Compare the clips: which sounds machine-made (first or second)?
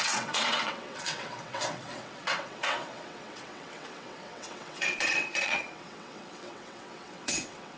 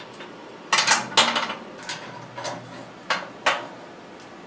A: first